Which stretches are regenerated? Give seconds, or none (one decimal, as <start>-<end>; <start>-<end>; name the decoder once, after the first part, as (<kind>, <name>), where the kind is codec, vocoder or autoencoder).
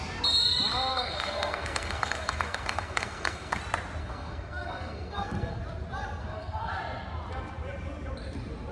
0.9-3.6 (codec, SNAC); 4.0-5.6; 6.2-6.7